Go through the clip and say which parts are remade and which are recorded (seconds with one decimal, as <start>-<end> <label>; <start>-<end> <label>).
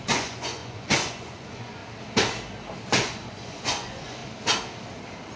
0.0-1.8 remade; 1.8-2.9 recorded; 2.9-4.2 remade; 4.2-5.4 recorded